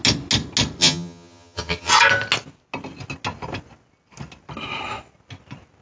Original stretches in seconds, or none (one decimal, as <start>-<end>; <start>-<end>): 0.0-0.8; 1.9-5.8